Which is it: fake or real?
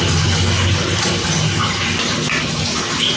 real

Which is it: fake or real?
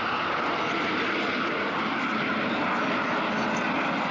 real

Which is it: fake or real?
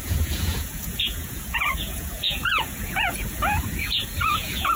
fake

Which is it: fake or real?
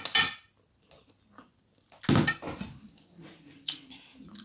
real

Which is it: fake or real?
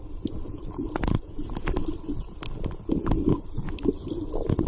real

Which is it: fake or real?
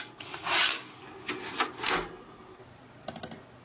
real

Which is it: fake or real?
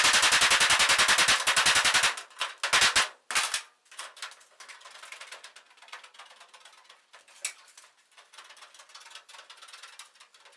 real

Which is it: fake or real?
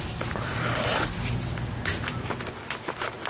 real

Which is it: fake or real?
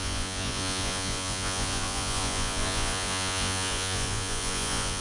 fake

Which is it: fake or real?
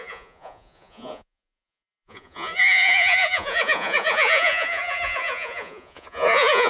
fake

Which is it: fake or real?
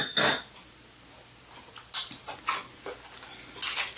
real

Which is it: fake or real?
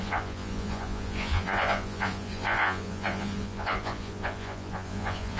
fake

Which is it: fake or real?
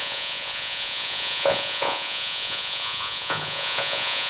fake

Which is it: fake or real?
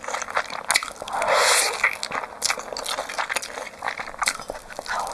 real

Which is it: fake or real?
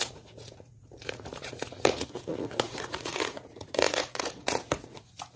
fake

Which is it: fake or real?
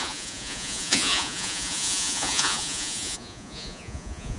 fake